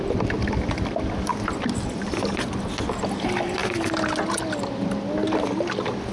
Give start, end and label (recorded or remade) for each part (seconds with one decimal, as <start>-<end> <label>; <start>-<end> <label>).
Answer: 0.0-6.1 recorded